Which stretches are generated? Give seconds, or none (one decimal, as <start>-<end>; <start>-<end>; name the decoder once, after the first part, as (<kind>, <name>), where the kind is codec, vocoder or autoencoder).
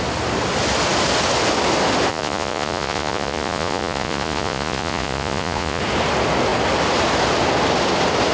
2.1-5.8 (vocoder, Vocos)